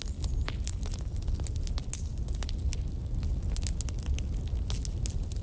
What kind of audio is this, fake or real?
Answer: real